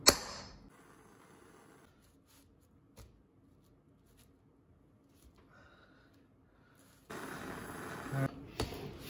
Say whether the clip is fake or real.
real